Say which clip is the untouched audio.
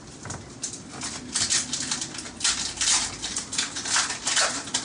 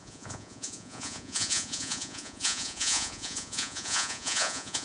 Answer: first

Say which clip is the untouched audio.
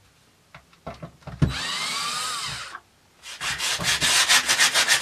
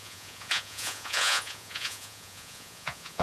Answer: first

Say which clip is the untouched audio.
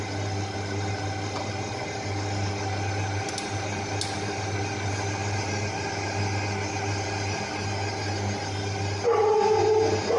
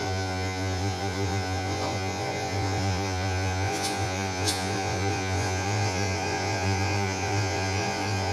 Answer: first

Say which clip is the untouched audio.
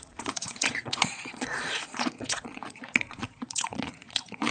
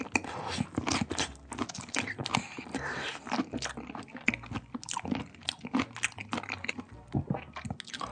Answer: second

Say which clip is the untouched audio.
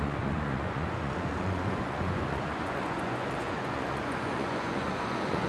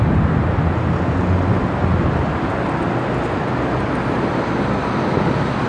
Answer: second